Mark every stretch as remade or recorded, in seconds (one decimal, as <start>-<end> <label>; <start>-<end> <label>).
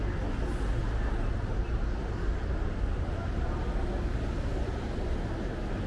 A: 0.0-5.9 recorded